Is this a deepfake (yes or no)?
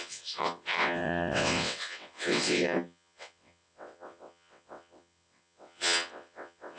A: yes